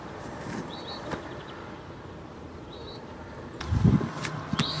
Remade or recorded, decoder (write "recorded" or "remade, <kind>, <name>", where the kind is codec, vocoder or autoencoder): recorded